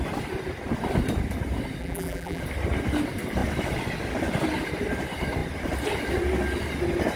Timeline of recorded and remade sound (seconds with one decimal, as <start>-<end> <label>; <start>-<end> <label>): 0.0-1.8 recorded; 1.8-2.4 remade; 2.4-7.2 recorded